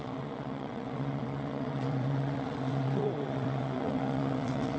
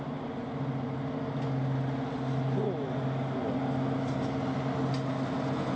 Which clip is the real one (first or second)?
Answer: second